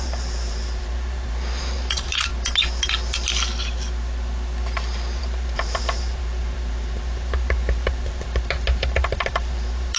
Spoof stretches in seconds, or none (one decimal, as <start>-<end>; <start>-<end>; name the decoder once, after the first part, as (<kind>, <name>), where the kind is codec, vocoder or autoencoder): 0.0-2.3 (vocoder, BigVGAN v2); 5.2-10.0